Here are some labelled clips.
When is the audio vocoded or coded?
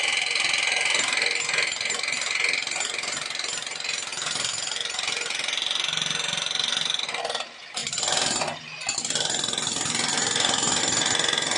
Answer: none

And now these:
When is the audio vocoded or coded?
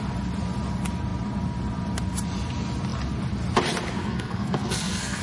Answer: 4.0-5.2 (codec, SNAC)